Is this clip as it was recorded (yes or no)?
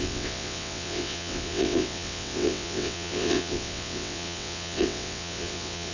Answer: no